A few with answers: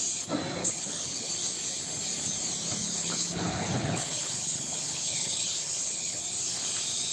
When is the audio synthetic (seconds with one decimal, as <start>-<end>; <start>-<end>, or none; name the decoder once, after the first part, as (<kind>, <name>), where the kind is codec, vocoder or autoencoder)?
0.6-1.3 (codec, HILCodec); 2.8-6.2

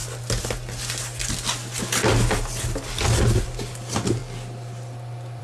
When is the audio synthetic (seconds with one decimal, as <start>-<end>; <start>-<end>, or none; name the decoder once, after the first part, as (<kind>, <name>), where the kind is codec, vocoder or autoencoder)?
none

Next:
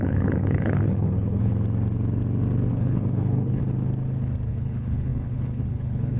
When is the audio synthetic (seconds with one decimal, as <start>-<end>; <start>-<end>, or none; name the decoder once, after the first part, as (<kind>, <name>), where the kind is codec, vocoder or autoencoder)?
0.0-1.5 (codec, HILCodec); 2.7-3.6; 4.5-6.2

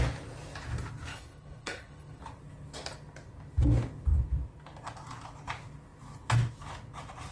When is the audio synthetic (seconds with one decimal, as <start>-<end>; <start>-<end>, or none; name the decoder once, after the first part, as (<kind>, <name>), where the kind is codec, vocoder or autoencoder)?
1.1-2.2 (codec, HILCodec)